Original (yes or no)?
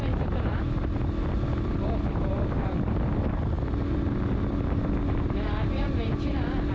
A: yes